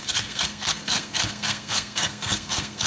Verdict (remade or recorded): remade